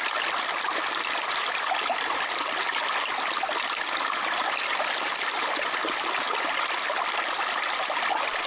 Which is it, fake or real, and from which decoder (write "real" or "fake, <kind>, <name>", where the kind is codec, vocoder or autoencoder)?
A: real